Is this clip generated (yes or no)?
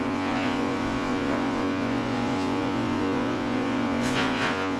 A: yes